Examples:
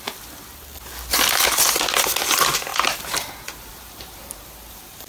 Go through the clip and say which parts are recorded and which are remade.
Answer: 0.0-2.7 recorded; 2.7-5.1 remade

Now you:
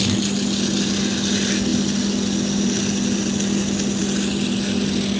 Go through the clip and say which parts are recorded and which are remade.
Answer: 0.0-5.2 recorded

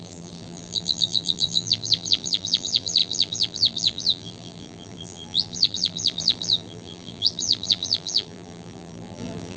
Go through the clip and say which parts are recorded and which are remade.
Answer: 0.0-9.6 remade